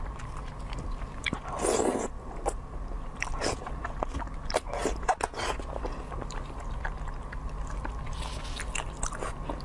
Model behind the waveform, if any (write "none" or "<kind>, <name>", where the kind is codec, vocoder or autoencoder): none